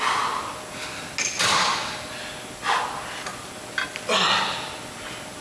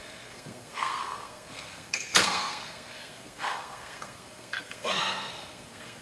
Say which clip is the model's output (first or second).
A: second